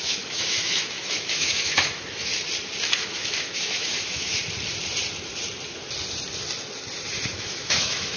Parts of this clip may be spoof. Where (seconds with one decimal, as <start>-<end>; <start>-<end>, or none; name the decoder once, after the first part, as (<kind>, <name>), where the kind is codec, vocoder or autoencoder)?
0.0-2.3 (autoencoder, DAC-VAE); 2.9-4.3; 7.3-8.2